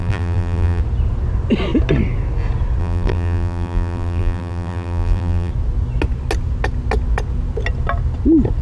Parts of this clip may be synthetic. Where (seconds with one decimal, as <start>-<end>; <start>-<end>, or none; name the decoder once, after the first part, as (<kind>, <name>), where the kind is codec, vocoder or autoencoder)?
0.0-0.8 (vocoder, BigVGAN v2); 2.8-5.5